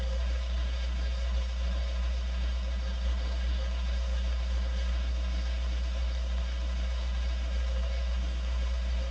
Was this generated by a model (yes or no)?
yes